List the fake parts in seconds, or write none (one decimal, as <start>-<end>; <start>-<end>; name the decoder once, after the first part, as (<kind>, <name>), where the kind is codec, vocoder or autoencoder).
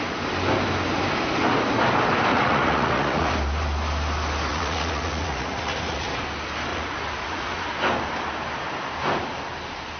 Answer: 2.3-3.3 (vocoder, Vocos); 4.5-6.2; 6.7-7.7